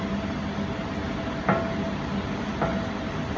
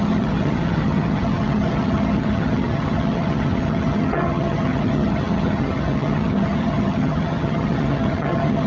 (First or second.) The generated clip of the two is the second